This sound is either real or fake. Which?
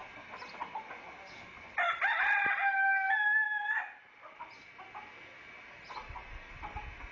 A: real